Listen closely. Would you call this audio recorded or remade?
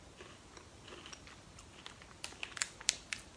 recorded